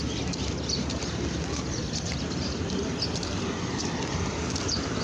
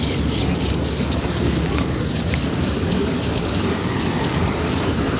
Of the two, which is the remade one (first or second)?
second